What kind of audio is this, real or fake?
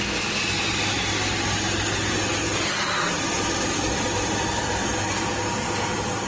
real